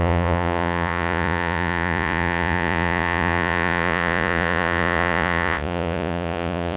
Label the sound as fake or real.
fake